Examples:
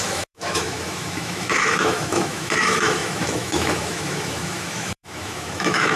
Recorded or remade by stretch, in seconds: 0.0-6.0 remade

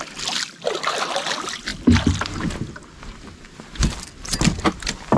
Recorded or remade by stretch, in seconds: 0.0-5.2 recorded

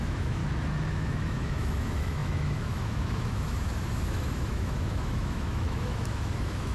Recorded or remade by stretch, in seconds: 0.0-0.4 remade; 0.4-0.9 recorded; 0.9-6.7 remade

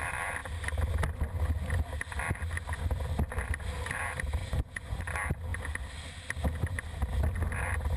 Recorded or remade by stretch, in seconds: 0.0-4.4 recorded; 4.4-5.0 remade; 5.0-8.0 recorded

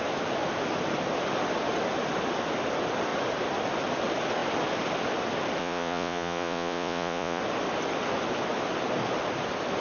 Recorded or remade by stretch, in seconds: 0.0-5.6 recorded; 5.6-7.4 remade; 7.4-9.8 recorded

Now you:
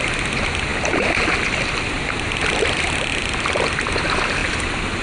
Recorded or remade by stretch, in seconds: 0.0-5.0 recorded

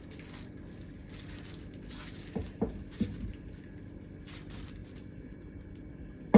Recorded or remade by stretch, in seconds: 0.0-2.4 recorded; 2.4-3.3 remade; 3.3-4.8 recorded; 4.8-5.9 remade; 5.9-6.4 recorded

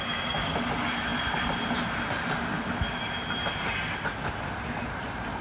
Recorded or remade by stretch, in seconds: 0.0-5.4 recorded